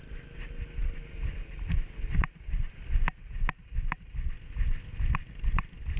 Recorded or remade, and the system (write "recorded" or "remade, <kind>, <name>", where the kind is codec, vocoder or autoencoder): recorded